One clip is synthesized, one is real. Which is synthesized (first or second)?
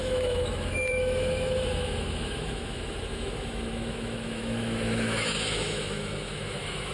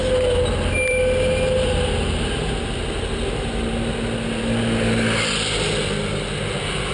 first